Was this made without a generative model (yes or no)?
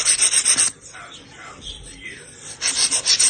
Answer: no